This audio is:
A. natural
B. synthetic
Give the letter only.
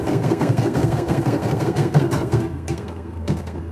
B